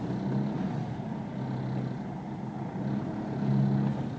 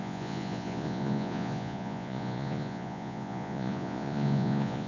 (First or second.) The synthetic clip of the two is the second